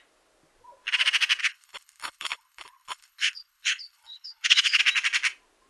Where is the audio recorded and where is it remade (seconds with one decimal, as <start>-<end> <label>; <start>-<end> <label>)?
0.0-1.4 recorded; 1.4-4.8 remade; 4.8-5.7 recorded